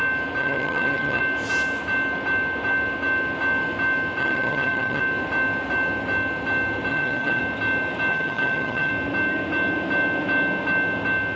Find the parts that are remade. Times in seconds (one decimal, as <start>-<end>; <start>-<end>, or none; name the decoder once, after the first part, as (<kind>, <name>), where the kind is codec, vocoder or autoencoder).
0.4-1.2 (vocoder, HiFi-GAN); 4.2-5.0; 6.9-7.4; 8.1-8.9